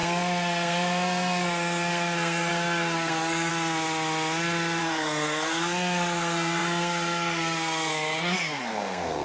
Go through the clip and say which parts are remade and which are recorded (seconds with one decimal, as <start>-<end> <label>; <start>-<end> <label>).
0.0-3.5 remade; 3.5-4.8 recorded; 4.8-9.2 remade